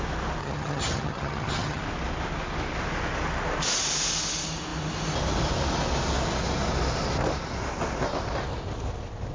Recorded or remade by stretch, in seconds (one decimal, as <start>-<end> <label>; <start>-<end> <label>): 0.0-0.4 recorded; 0.4-1.8 remade; 1.8-9.3 recorded